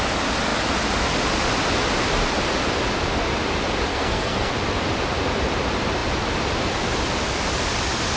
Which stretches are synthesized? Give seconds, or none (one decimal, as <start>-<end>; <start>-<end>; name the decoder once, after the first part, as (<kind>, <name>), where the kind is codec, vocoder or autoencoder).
3.9-4.5 (codec, SNAC)